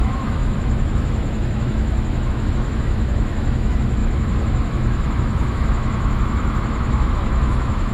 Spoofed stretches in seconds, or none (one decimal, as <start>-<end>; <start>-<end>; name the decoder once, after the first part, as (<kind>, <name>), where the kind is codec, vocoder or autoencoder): 0.0-7.9 (autoencoder, DAC-VAE)